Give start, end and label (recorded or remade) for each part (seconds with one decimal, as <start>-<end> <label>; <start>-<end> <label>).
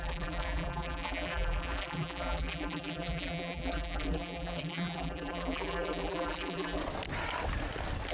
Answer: 0.0-6.8 remade; 6.8-8.1 recorded